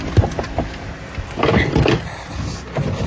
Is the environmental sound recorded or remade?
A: recorded